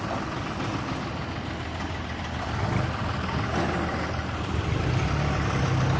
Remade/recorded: recorded